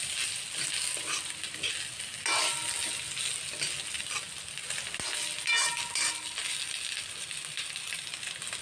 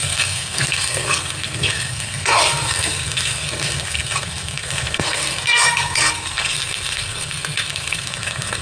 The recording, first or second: first